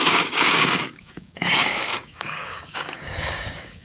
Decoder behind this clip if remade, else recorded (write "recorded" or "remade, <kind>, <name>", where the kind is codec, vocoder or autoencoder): remade, codec, DAC